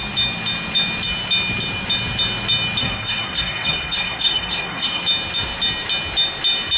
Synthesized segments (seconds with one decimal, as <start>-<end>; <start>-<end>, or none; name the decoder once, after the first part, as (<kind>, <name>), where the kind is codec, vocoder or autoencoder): 2.8-5.0 (codec, SNAC)

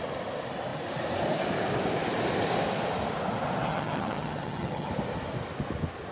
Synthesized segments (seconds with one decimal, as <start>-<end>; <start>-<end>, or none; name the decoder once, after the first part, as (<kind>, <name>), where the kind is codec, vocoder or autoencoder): 3.7-4.9 (vocoder, HiFi-GAN)

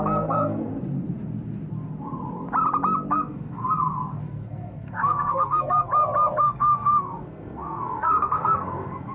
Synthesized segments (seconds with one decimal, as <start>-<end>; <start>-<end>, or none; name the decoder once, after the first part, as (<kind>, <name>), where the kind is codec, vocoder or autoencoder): 0.0-0.7 (codec, SNAC); 3.1-3.6; 4.2-5.9; 6.4-9.1

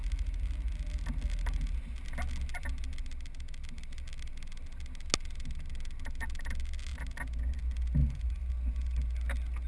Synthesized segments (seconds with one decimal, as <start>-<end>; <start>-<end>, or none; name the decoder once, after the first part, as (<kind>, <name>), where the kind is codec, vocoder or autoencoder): 8.0-8.5 (vocoder, BigVGAN v2)

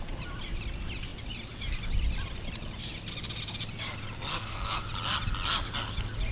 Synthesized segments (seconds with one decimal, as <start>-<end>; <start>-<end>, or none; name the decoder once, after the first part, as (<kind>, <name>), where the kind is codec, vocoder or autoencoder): 4.3-4.8 (codec, SNAC)